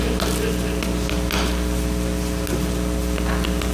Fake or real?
real